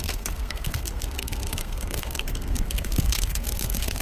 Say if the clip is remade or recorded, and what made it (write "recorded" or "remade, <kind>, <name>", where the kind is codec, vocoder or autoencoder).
remade, codec, SNAC